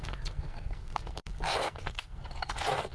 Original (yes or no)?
no